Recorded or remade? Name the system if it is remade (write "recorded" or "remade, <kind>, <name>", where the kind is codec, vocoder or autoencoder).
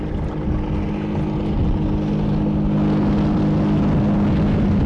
recorded